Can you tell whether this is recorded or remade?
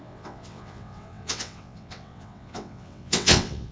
remade